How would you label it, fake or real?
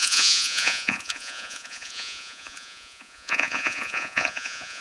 fake